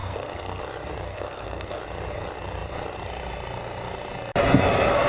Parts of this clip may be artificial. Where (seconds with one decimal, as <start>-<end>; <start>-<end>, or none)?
0.0-0.6; 1.1-1.8